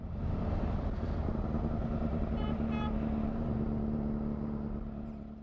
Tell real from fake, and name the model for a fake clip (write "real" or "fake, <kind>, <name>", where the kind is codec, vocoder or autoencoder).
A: real